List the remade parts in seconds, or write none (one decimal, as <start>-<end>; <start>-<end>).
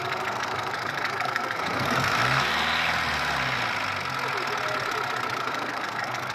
0.0-2.5; 5.4-6.3